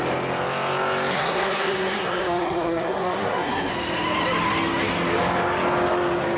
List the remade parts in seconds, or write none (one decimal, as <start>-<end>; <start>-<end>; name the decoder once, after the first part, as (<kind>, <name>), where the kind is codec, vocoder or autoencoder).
1.1-3.7 (codec, SNAC)